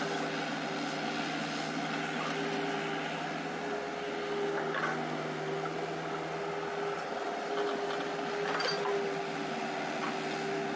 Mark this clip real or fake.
real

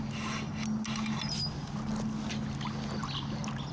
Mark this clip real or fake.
real